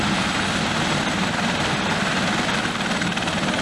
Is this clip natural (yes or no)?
yes